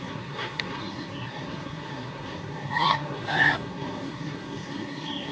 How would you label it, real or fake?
fake